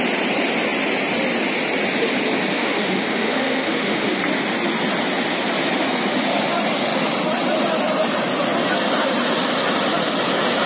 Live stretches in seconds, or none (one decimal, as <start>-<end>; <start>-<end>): 0.0-2.5; 4.2-10.7